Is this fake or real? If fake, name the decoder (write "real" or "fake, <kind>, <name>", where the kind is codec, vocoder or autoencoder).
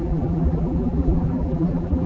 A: fake, vocoder, BigVGAN v2